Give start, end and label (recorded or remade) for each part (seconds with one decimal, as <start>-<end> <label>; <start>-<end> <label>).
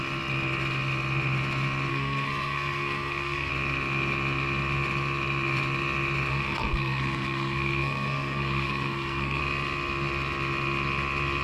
0.0-1.9 recorded; 1.9-3.5 remade; 3.5-6.3 recorded; 6.3-9.4 remade; 9.4-11.4 recorded